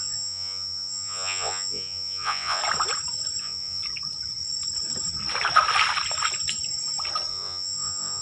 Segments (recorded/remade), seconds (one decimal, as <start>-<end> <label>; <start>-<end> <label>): 0.0-2.6 remade; 2.6-3.4 recorded; 3.4-3.8 remade; 3.8-7.3 recorded; 7.3-8.2 remade